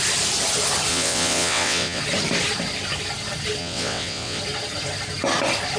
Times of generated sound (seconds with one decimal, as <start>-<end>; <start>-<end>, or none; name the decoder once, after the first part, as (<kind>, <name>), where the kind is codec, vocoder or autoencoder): 0.9-2.0 (vocoder, WaveNeXt); 3.6-4.4